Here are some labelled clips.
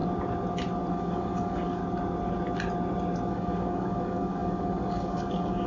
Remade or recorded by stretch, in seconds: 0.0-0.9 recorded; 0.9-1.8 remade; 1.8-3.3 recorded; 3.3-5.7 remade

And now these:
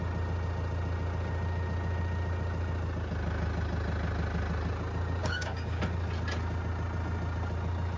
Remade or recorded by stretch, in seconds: 0.0-5.2 recorded; 5.2-5.8 remade; 5.8-8.0 recorded

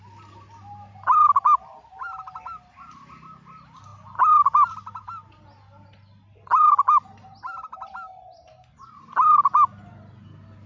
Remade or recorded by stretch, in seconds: 0.0-10.7 recorded

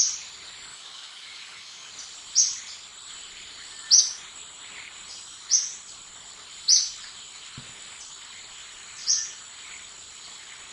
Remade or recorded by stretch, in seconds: 0.0-0.7 recorded; 0.7-1.9 remade; 1.9-10.7 recorded

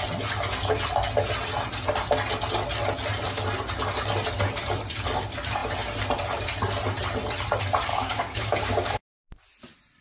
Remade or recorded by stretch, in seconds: 0.0-7.9 recorded; 7.9-9.0 remade; 9.0-10.0 recorded

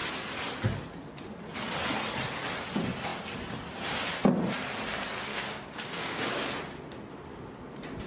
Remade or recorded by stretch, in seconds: 0.0-5.3 recorded; 5.3-6.5 remade; 6.5-8.1 recorded

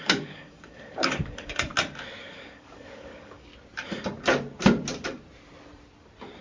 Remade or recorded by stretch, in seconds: 0.0-1.7 remade; 1.7-2.2 recorded; 2.2-3.5 remade; 3.5-6.4 recorded

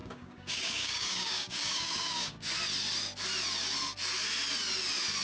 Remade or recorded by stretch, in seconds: 0.0-2.5 remade; 2.5-5.2 recorded